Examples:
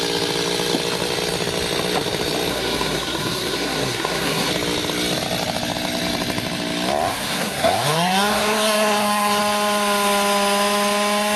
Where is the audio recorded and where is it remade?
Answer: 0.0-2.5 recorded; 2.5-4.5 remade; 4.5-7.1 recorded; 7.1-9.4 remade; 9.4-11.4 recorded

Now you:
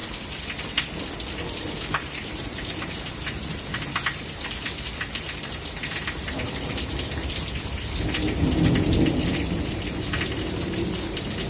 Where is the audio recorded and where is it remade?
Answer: 0.0-11.5 recorded